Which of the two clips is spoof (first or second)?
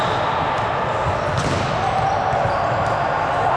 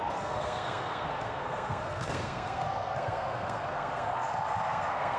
second